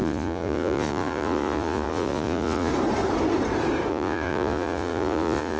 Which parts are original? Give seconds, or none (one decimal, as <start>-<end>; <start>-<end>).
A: 2.7-3.9